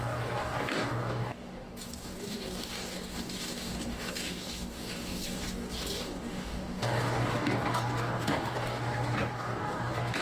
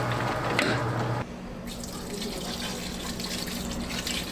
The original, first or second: second